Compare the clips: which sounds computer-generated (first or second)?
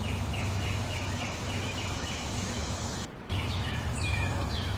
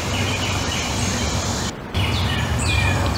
first